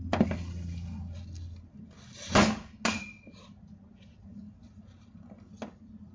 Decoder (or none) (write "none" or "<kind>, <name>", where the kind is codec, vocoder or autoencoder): none